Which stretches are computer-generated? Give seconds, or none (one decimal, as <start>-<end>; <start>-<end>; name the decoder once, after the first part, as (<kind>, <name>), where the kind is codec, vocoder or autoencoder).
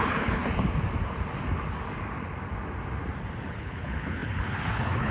0.0-0.4 (codec, HILCodec); 3.5-5.1